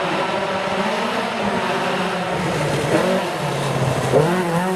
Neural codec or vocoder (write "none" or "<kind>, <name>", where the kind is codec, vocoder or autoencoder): none